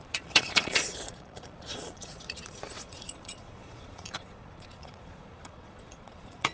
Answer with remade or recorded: remade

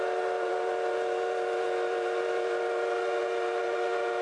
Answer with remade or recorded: recorded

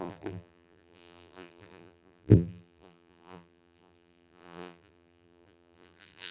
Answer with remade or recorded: remade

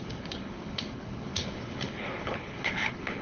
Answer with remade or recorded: remade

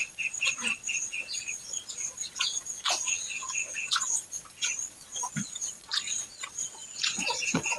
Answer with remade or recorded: remade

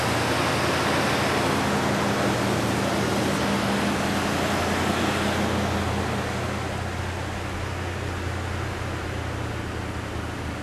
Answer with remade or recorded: recorded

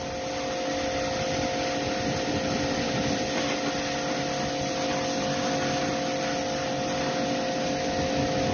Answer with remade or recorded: recorded